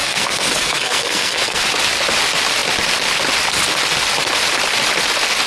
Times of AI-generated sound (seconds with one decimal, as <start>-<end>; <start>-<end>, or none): 0.0-1.6